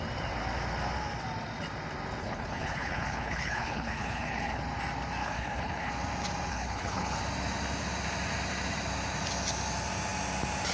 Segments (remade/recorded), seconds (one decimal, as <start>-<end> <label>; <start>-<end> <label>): 0.0-2.2 recorded; 2.2-4.6 remade; 4.6-5.2 recorded; 5.2-5.9 remade; 5.9-6.5 recorded; 6.5-7.2 remade; 7.2-10.7 recorded